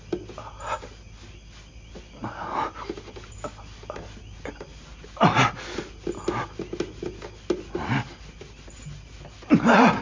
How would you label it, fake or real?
real